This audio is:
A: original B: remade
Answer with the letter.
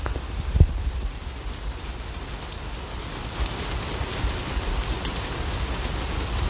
A